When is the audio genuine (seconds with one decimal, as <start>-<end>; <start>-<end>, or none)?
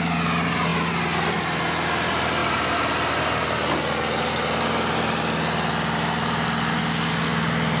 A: 0.0-7.8